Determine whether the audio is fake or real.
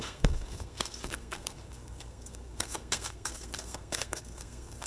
fake